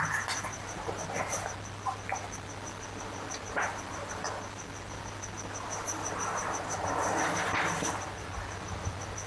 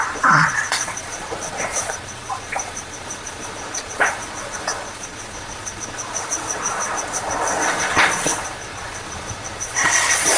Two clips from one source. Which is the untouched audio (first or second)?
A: first